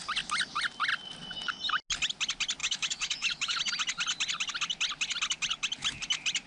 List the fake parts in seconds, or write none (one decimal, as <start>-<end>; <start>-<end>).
2.6-3.6